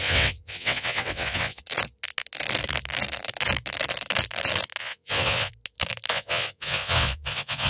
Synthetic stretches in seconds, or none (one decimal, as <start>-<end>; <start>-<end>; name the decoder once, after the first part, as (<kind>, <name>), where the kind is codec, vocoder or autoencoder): 0.0-1.6 (vocoder, WaveNeXt); 4.8-5.5; 6.1-7.7